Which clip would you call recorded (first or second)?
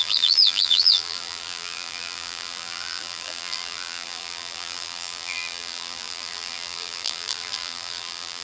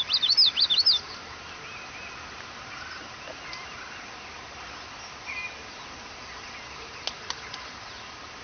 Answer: second